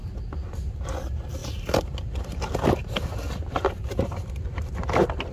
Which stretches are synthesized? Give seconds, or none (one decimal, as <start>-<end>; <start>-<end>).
none

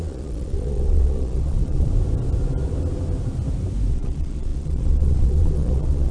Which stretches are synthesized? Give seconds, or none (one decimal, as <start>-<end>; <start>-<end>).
0.0-1.9; 3.9-6.1

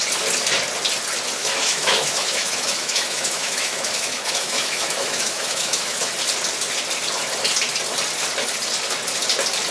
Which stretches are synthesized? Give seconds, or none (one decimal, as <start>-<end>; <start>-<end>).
1.4-6.1

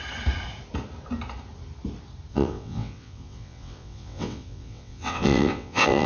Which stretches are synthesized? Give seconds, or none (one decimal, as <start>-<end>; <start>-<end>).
2.3-6.1

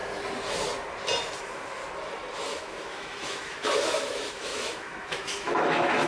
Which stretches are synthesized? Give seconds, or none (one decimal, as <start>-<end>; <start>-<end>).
1.4-1.8; 2.4-6.1

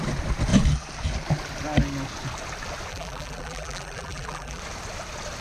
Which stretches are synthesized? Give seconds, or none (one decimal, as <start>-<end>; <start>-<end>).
2.9-4.6

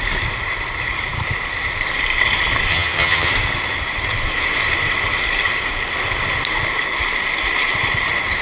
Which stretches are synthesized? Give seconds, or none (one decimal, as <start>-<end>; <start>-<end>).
2.7-3.3

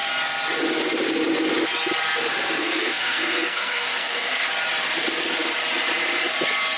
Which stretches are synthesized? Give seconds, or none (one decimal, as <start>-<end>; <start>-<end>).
2.6-4.4